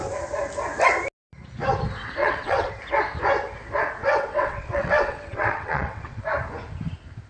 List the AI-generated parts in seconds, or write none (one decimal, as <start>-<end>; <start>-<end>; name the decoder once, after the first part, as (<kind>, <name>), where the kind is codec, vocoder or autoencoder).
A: 2.2-2.7 (vocoder, WaveNeXt); 4.0-6.2